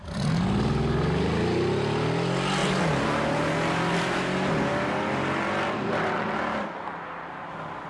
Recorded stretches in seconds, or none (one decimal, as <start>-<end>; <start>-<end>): 0.0-7.9